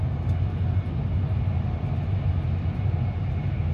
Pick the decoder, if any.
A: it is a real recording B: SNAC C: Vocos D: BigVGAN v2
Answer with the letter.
A